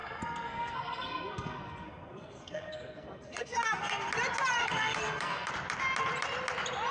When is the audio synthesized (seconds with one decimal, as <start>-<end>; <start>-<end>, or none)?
0.0-4.1; 4.6-5.5